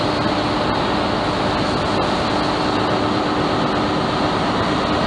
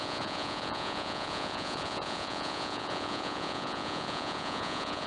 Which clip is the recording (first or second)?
first